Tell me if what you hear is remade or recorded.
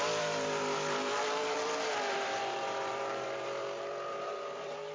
remade